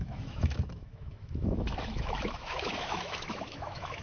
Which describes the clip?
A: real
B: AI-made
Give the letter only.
B